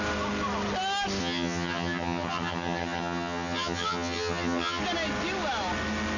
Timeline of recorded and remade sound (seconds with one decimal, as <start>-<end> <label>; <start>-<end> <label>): 0.0-1.2 recorded; 1.2-4.8 remade; 4.8-6.2 recorded